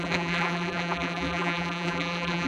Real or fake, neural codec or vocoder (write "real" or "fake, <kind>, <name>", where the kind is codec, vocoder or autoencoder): fake, vocoder, BigVGAN v2